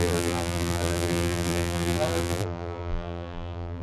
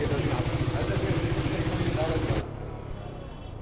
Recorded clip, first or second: second